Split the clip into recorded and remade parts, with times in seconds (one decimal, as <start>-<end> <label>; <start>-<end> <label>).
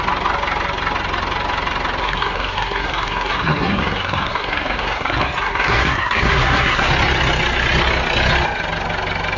0.0-2.0 recorded; 2.0-6.9 remade; 6.9-9.4 recorded